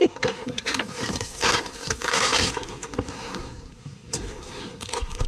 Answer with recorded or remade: remade